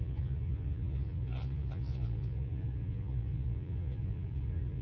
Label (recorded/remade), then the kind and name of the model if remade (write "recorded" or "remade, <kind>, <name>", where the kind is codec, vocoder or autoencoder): remade, vocoder, Vocos